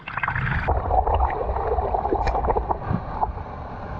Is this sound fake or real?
real